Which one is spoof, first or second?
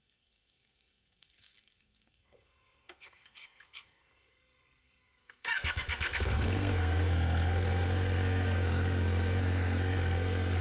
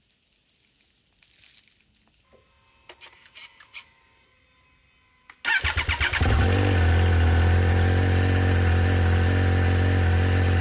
first